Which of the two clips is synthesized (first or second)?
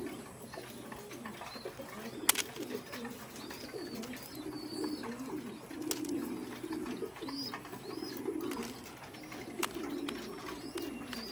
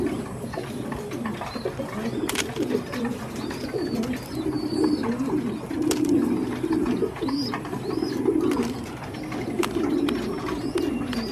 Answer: second